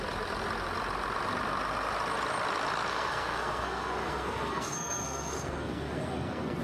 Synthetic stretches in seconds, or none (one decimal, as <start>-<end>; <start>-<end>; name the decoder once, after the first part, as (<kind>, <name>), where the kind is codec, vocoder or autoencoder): 2.9-6.6 (codec, SNAC)